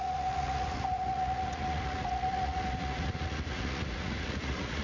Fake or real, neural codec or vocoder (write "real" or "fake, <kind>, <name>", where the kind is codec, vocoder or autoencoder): fake, vocoder, Vocos